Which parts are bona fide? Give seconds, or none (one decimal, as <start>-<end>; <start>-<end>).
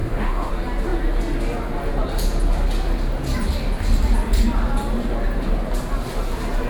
0.5-6.7